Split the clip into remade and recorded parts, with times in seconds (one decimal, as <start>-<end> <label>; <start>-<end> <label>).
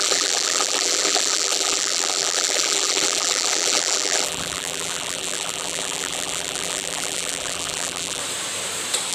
0.0-8.2 remade; 8.2-9.1 recorded